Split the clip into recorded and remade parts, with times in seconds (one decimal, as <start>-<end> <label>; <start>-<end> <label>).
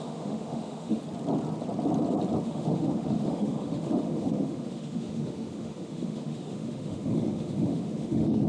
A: 0.0-1.0 remade; 1.0-2.4 recorded; 2.4-8.5 remade